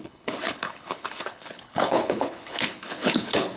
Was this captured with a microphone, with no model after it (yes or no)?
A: no